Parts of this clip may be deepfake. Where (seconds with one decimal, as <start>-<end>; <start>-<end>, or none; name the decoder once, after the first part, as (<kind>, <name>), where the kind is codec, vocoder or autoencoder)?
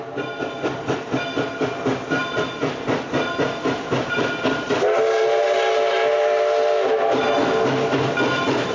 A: none